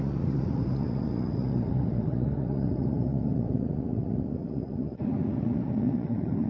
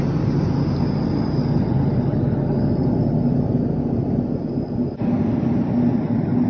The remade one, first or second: first